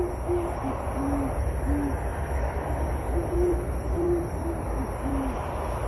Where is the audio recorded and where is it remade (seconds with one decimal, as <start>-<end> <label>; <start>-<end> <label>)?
0.0-2.1 recorded; 2.1-5.5 remade; 5.5-5.9 recorded